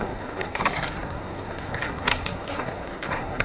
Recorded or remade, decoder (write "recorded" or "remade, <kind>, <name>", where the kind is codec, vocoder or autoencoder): remade, codec, SNAC